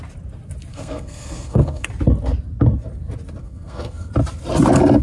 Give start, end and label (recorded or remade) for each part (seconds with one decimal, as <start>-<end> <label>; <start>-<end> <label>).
0.0-0.7 recorded; 0.7-1.9 remade; 1.9-3.4 recorded; 3.4-4.1 remade; 4.1-5.0 recorded